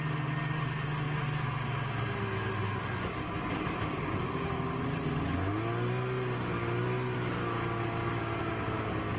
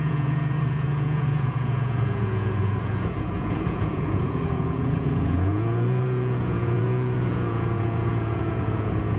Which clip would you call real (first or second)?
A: first